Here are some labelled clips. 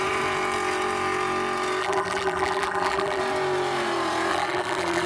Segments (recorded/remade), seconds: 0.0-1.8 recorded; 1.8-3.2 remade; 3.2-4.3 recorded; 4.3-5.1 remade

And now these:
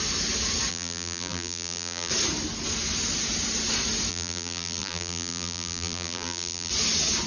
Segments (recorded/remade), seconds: 0.0-0.7 recorded; 0.7-2.1 remade; 2.1-4.1 recorded; 4.1-6.7 remade; 6.7-7.3 recorded

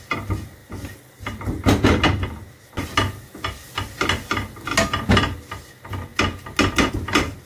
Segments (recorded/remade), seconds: 0.0-7.5 recorded

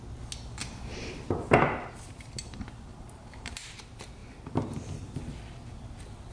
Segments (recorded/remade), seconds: 0.0-2.9 recorded; 2.9-3.7 remade; 3.7-4.2 recorded; 4.2-5.0 remade; 5.0-6.3 recorded

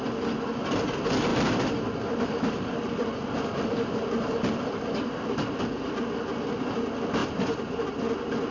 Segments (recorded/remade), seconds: 0.0-1.3 recorded; 1.3-5.6 remade; 5.6-7.2 recorded; 7.2-7.8 remade; 7.8-8.5 recorded

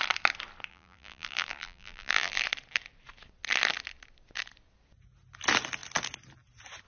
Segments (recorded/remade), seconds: 0.0-0.7 recorded; 0.7-2.4 remade; 2.4-6.9 recorded